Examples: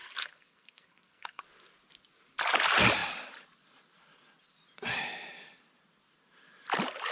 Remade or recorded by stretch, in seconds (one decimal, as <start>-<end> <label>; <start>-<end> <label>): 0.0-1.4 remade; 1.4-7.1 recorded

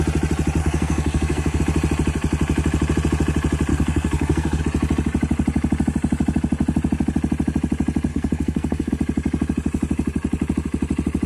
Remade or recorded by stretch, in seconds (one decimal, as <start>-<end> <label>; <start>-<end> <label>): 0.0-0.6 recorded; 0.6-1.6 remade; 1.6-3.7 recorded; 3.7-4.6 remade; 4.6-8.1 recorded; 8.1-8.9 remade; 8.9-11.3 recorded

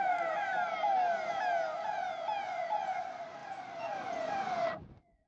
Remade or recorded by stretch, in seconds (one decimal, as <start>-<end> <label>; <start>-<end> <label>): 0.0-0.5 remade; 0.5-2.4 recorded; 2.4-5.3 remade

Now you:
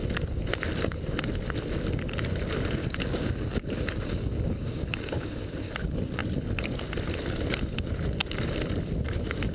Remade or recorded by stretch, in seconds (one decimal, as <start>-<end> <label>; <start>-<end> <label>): 0.0-2.8 recorded; 2.8-5.7 remade; 5.7-9.5 recorded

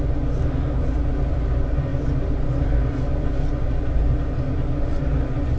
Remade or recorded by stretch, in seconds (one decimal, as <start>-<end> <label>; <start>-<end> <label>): 0.0-5.6 recorded

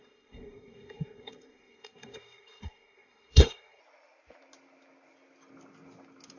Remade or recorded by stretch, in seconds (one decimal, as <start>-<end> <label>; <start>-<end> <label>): 0.0-3.8 remade; 3.8-6.4 recorded

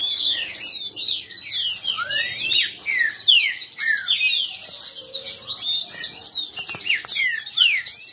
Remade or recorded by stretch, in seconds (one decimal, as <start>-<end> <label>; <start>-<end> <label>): 0.0-0.5 remade; 0.5-8.1 recorded